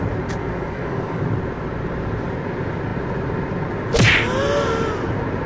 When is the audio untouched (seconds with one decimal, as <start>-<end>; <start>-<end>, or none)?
0.0-0.4; 1.2-5.5